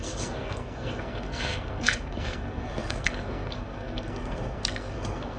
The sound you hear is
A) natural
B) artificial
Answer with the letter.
B